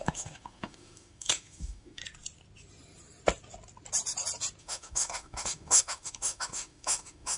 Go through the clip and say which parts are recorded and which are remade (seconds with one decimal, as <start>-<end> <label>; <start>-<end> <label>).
0.0-2.0 remade; 2.0-4.6 recorded; 4.6-7.4 remade